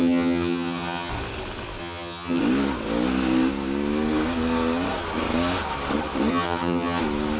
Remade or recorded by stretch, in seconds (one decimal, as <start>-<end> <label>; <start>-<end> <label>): 0.0-1.1 remade; 1.1-1.8 recorded; 1.8-2.4 remade; 2.4-6.3 recorded; 6.3-7.0 remade; 7.0-7.4 recorded